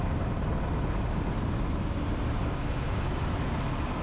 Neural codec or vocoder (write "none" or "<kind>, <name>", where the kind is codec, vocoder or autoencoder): none